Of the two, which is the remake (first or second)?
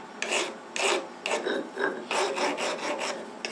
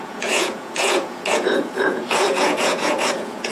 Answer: second